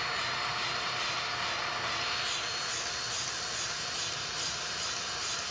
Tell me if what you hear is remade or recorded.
recorded